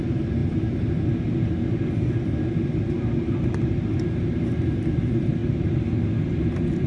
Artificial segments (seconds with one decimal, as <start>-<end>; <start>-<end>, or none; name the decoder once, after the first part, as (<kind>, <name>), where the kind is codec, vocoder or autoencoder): 0.0-0.4 (vocoder, BigVGAN v2); 4.4-5.4